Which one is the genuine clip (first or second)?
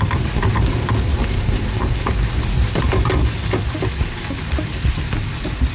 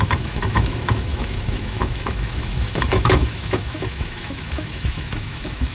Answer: first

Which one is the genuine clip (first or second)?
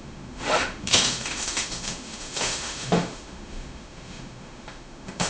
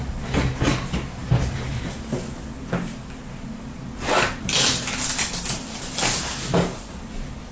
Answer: second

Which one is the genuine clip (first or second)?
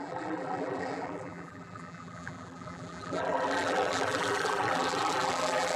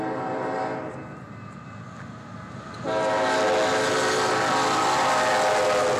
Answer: second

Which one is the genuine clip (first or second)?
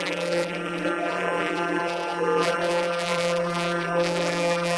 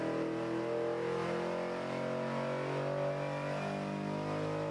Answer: second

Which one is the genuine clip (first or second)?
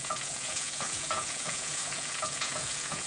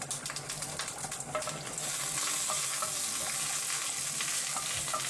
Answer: second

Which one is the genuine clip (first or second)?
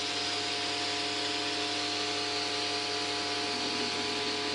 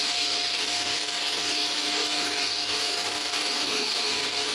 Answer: first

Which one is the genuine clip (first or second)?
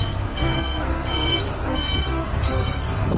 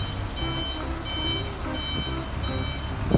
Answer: second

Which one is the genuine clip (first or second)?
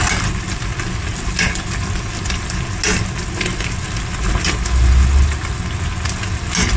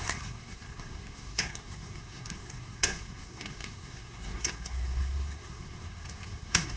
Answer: first